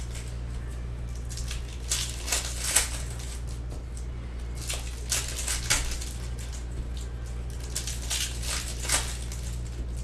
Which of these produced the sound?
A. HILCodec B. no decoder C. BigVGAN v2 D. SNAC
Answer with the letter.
B